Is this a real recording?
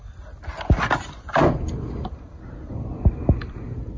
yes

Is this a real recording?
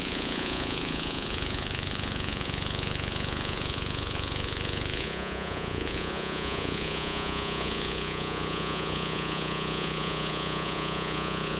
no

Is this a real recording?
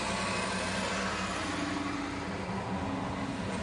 yes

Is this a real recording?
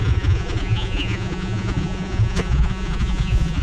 no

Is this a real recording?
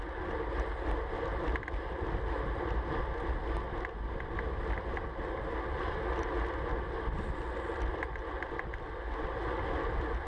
yes